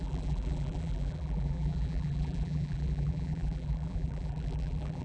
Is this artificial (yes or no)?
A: yes